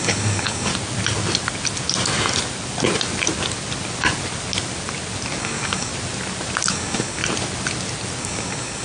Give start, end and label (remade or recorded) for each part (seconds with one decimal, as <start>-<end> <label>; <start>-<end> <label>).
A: 0.0-0.7 remade; 0.7-5.4 recorded; 5.4-5.9 remade; 5.9-6.7 recorded; 6.7-7.2 remade; 7.2-8.2 recorded; 8.2-8.8 remade